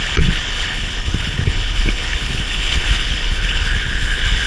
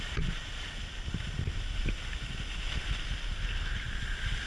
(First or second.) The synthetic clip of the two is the first